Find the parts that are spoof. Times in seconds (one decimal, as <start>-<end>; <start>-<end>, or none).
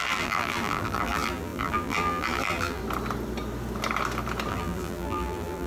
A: 0.0-2.8; 4.5-5.7